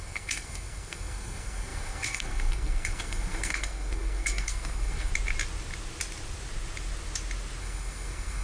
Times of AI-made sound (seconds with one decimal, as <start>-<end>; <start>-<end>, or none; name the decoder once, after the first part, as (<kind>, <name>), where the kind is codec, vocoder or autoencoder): 0.0-5.1 (codec, SNAC); 7.6-8.4